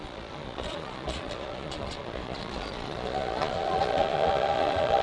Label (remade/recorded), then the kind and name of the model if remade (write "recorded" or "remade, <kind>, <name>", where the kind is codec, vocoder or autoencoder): remade, vocoder, Vocos